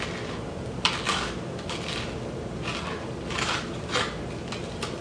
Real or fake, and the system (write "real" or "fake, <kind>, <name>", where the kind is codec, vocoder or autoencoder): real